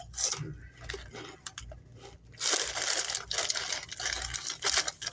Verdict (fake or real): real